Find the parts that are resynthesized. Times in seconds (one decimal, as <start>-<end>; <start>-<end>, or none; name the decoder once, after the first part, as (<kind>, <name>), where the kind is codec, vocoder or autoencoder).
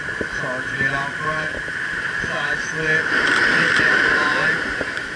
none